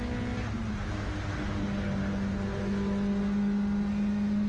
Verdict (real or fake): real